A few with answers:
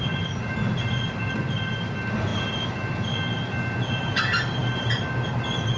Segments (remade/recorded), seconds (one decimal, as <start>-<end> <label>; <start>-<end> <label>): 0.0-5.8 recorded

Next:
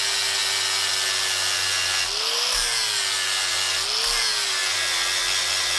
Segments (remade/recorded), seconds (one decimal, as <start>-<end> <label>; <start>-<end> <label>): 0.0-5.8 recorded

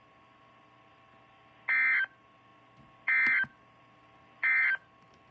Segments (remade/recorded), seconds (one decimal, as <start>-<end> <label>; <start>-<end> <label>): 0.0-5.3 recorded